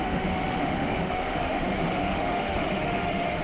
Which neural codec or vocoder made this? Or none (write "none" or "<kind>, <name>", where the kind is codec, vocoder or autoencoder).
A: autoencoder, DAC-VAE